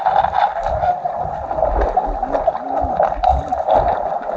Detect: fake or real real